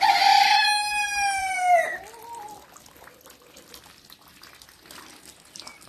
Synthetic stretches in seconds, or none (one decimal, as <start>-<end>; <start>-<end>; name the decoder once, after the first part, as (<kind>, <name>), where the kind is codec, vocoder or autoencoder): none